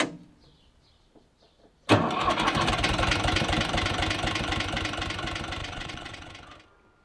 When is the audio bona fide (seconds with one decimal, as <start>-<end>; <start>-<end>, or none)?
0.0-5.6; 6.3-7.0